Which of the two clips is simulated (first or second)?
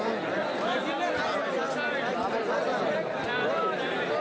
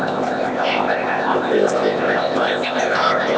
second